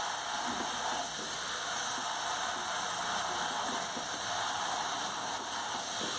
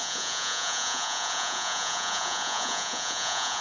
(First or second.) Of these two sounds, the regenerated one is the second